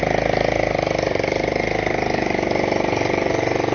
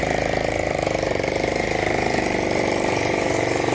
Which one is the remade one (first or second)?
second